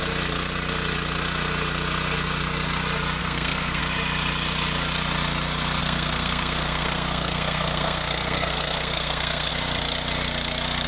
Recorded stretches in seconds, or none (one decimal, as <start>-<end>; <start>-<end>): 0.0-3.2; 3.8-5.8; 9.5-10.9